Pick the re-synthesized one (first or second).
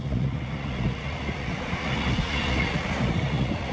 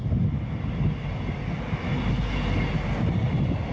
first